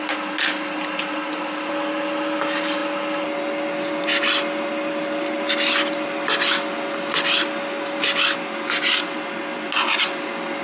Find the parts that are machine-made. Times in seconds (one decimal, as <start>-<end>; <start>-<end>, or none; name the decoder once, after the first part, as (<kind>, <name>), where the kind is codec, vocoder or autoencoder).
none